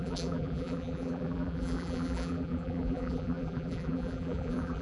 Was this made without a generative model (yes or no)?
no